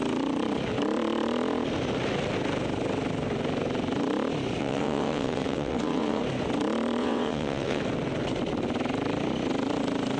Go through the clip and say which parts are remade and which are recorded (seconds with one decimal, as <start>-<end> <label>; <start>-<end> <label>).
0.0-4.6 recorded; 4.6-6.2 remade; 6.2-7.0 recorded; 7.0-7.8 remade; 7.8-10.2 recorded